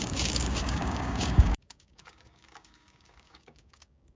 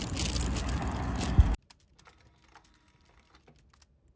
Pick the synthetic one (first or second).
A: first